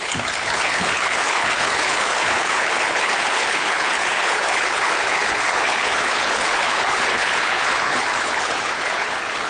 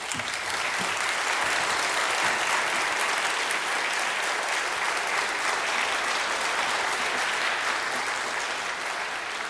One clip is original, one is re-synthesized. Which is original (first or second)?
second